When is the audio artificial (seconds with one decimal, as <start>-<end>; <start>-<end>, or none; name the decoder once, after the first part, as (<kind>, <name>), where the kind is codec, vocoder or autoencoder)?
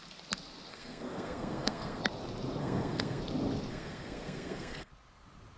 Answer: 0.7-2.0 (codec, SNAC); 2.6-3.2; 3.7-4.9